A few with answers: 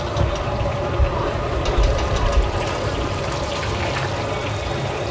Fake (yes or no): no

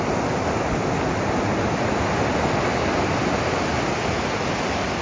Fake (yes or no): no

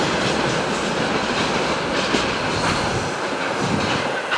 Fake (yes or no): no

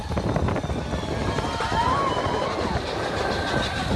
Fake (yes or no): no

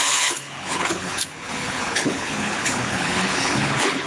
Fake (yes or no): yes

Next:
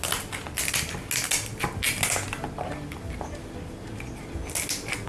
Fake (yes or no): no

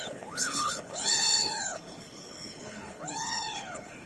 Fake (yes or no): yes